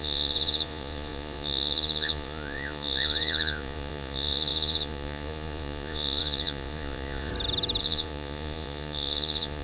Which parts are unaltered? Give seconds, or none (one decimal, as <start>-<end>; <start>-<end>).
7.3-7.8